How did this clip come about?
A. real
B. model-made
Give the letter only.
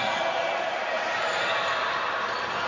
A